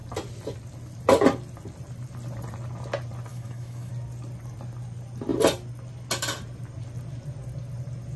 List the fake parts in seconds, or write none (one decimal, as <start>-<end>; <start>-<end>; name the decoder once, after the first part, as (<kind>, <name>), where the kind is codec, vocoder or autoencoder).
3.3-3.9 (autoencoder, DAC-VAE)